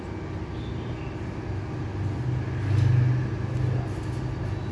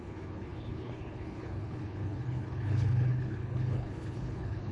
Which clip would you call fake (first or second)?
second